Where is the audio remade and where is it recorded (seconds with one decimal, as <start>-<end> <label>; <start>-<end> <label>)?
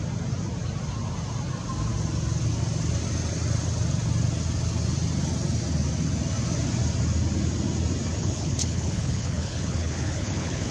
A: 0.0-8.2 recorded; 8.2-10.7 remade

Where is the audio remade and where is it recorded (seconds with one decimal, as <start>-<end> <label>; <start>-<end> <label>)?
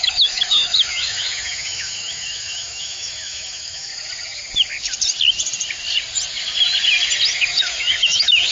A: 0.0-3.9 remade; 3.9-7.6 recorded; 7.6-8.5 remade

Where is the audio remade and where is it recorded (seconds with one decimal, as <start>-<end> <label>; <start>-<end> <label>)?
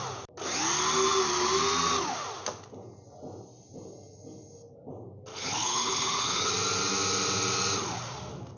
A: 0.0-5.3 recorded; 5.3-6.5 remade; 6.5-8.6 recorded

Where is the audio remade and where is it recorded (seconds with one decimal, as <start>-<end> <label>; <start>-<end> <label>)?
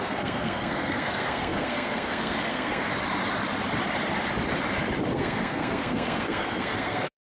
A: 0.0-2.9 remade; 2.9-5.1 recorded; 5.1-7.3 remade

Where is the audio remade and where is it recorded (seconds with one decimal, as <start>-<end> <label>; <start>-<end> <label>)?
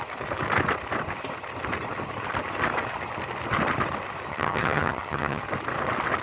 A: 0.0-4.3 recorded; 4.3-5.4 remade; 5.4-6.2 recorded